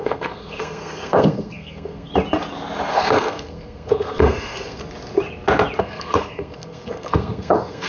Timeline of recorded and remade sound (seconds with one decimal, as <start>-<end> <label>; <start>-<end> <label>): 0.0-2.1 remade; 2.1-2.9 recorded; 2.9-4.8 remade; 4.8-5.8 recorded; 5.8-7.9 remade

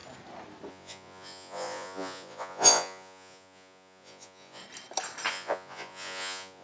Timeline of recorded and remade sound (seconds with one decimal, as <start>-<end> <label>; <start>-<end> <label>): 0.0-0.7 recorded; 0.7-4.6 remade; 4.6-5.3 recorded; 5.3-6.6 remade

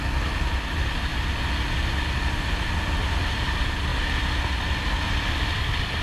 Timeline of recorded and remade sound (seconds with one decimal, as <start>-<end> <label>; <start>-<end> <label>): 0.0-6.0 recorded

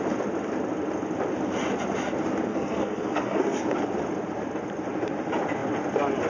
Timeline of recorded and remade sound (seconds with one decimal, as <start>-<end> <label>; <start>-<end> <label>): 0.0-2.5 recorded; 2.5-3.6 remade; 3.6-6.3 recorded